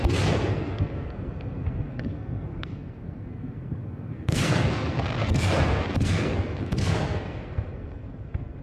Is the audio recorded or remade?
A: remade